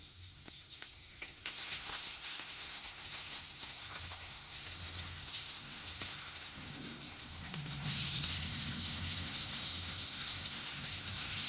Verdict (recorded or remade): remade